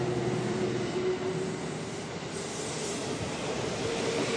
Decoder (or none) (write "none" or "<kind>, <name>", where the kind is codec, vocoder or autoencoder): none